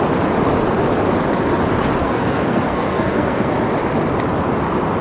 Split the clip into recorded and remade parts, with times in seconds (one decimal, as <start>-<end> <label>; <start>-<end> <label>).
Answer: 0.0-2.0 recorded; 2.0-3.5 remade; 3.5-5.0 recorded